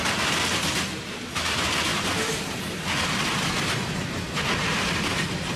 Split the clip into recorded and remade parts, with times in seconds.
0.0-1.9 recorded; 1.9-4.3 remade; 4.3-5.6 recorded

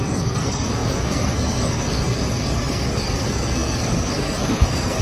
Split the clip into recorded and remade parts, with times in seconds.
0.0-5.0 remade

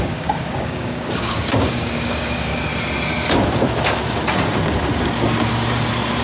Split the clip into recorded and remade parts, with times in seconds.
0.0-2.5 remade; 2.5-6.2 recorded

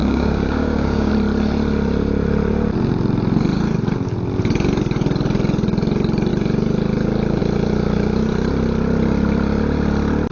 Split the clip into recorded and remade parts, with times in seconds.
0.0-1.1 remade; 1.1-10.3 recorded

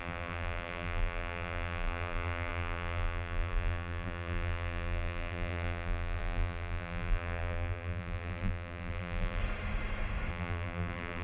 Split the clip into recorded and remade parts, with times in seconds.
0.0-9.4 remade; 9.4-10.3 recorded; 10.3-11.2 remade

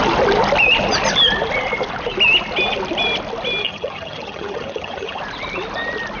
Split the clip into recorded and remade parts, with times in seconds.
0.0-3.6 recorded; 3.6-5.2 remade; 5.2-6.2 recorded

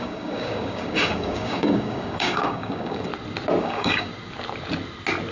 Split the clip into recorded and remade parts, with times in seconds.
0.0-3.1 remade; 3.1-3.6 recorded; 3.6-4.1 remade; 4.1-5.3 recorded

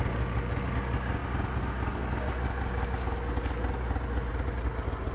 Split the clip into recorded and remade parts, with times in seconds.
0.0-5.1 recorded